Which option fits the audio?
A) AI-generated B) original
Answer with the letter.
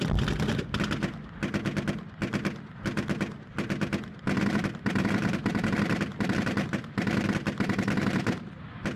B